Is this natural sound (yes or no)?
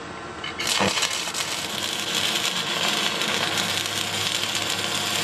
yes